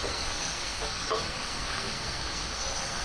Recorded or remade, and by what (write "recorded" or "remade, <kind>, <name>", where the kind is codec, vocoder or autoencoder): remade, codec, SNAC